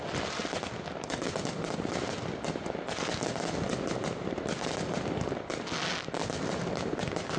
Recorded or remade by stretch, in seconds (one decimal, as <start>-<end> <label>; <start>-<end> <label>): 0.0-7.4 recorded